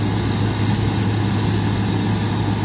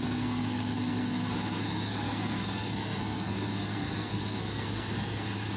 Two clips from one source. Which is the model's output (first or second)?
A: second